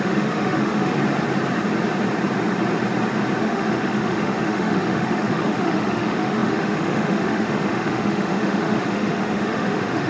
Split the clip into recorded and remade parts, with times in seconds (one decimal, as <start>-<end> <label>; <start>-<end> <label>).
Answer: 0.0-0.9 remade; 0.9-3.4 recorded; 3.4-10.1 remade